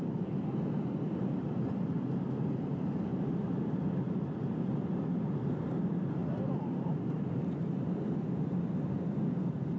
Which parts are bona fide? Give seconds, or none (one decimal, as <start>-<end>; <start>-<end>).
0.0-6.2; 8.5-9.8